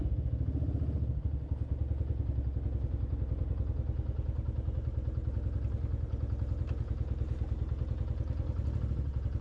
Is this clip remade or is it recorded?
recorded